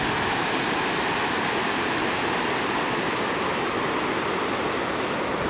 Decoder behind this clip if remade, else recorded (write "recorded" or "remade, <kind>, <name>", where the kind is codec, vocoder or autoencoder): recorded